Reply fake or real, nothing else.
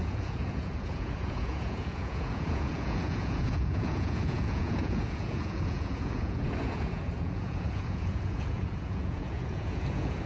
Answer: fake